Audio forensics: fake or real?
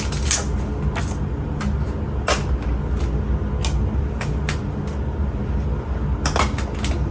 real